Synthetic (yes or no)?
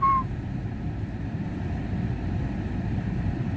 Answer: yes